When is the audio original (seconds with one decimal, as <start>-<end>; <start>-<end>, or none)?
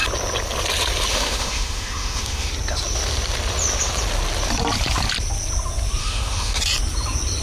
0.0-1.1; 2.5-6.0; 6.6-7.4